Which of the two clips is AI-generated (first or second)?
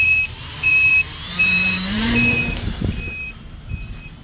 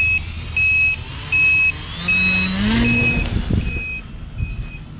first